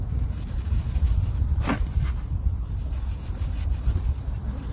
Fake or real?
real